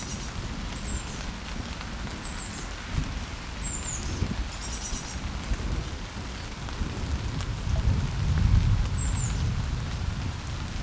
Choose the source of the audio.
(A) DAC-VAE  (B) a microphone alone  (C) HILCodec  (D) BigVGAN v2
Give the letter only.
B